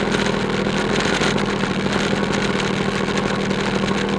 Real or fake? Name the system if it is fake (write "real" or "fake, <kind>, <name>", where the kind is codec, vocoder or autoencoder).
real